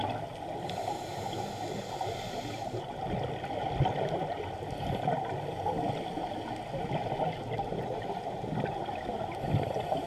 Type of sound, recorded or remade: recorded